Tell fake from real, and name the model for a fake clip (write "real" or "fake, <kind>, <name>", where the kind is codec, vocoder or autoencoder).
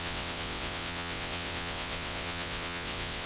fake, vocoder, WaveNeXt